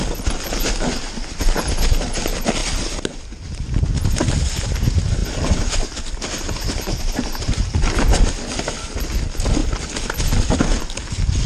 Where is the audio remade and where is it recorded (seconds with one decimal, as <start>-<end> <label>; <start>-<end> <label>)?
0.0-0.7 remade; 0.7-5.2 recorded; 5.2-9.2 remade; 9.2-9.6 recorded; 9.6-10.8 remade; 10.8-11.5 recorded